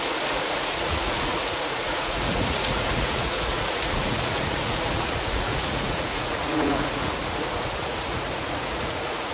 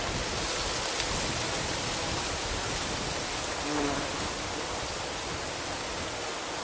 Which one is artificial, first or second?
first